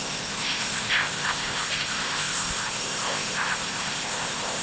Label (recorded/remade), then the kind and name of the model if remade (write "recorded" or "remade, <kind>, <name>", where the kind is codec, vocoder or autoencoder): remade, codec, ZipCodec